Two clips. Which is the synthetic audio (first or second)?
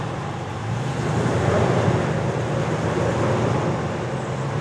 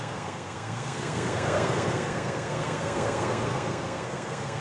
second